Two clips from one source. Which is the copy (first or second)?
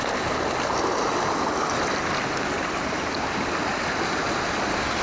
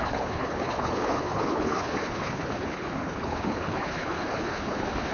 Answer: second